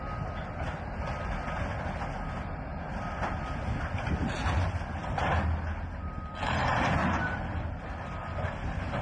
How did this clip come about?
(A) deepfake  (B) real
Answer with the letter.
B